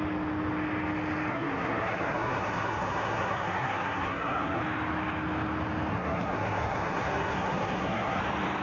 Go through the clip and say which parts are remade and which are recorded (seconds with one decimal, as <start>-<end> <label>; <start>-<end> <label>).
0.0-1.3 recorded; 1.3-4.6 remade; 4.6-5.9 recorded; 5.9-8.2 remade; 8.2-8.6 recorded